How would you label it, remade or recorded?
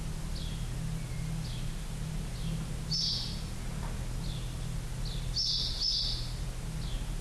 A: recorded